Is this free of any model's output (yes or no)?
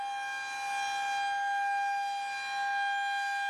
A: yes